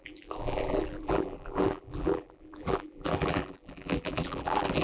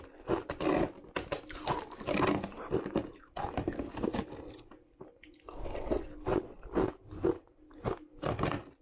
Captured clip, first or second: second